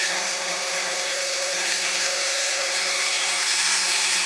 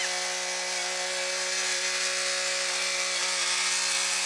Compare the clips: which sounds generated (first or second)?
first